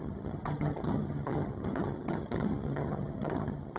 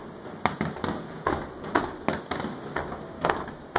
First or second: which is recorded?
second